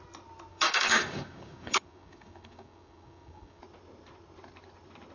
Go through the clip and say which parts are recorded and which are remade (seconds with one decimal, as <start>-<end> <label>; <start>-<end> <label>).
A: 0.0-0.5 recorded; 0.5-3.6 remade; 3.6-5.1 recorded